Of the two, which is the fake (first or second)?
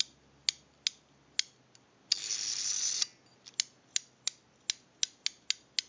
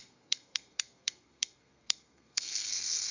second